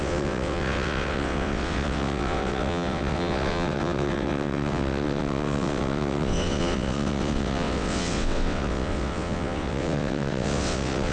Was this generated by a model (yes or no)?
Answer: yes